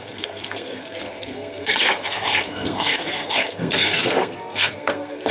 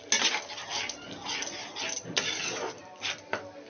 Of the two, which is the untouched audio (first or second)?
second